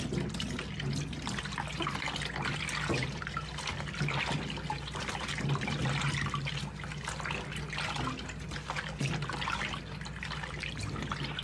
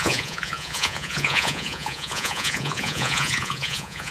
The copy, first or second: second